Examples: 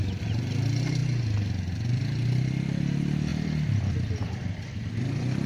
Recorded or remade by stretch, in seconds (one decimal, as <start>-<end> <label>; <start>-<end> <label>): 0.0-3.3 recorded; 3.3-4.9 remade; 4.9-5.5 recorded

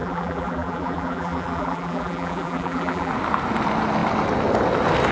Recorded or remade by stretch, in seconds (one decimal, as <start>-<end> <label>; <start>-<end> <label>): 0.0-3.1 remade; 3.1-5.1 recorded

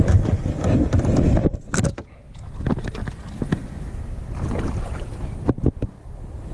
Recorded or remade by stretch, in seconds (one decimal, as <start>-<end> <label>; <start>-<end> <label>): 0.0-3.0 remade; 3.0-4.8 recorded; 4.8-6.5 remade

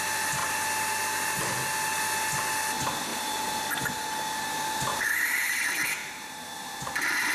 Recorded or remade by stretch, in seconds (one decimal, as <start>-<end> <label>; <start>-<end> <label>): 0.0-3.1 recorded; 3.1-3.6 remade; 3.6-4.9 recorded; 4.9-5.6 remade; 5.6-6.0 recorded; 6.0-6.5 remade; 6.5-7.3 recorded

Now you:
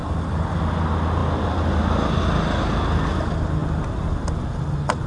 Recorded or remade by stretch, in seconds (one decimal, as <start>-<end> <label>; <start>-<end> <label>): 0.0-0.6 remade; 0.6-5.1 recorded